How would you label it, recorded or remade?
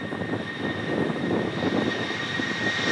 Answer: recorded